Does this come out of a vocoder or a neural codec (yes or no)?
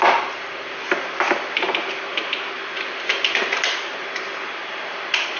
no